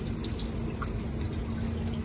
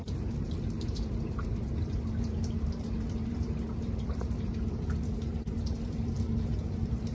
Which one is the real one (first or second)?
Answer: first